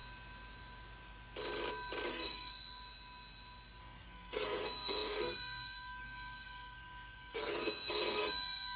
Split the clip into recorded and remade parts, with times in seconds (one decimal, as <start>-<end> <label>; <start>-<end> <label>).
0.0-2.1 recorded; 2.1-2.5 remade; 2.5-3.8 recorded; 3.8-8.8 remade